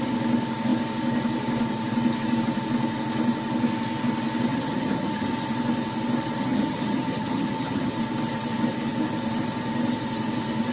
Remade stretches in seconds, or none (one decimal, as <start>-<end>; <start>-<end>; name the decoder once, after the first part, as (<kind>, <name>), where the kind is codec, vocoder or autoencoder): 4.5-5.3 (vocoder, HiFi-GAN); 6.4-7.9

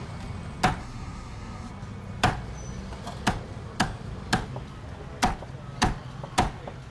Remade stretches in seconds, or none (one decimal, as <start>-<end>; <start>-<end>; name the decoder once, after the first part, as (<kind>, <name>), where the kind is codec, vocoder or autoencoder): 0.8-1.7 (codec, SNAC)

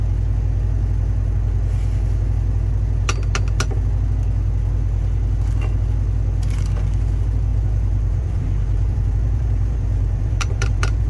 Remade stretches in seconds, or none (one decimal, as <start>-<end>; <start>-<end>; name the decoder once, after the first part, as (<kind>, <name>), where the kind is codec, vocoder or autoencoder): 7.5-11.1 (vocoder, BigVGAN v2)

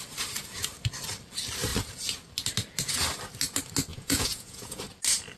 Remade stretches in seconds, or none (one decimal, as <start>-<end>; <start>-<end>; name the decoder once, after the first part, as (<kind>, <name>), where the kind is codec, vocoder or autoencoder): 3.9-4.8 (vocoder, Vocos)